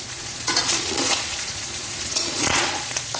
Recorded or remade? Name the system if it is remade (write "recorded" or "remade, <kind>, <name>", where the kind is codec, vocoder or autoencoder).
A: remade, vocoder, Vocos